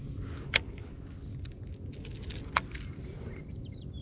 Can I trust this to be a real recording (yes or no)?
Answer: yes